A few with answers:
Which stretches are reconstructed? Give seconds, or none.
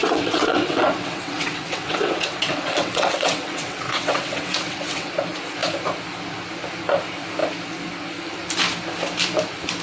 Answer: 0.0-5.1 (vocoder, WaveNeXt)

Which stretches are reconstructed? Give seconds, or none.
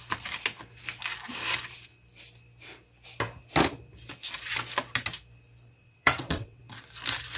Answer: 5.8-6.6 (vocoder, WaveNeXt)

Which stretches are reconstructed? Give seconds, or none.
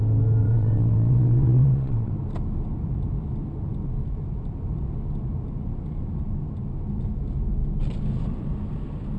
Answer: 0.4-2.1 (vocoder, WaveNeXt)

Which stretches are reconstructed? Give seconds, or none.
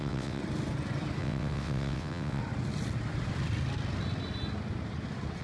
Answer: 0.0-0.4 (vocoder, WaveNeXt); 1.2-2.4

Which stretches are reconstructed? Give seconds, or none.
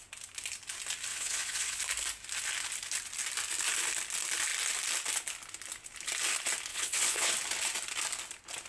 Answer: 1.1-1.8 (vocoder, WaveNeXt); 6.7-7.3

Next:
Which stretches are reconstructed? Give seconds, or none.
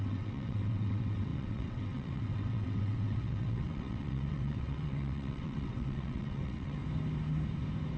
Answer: 0.0-6.8 (vocoder, WaveNeXt)